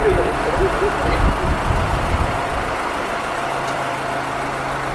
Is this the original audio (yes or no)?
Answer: yes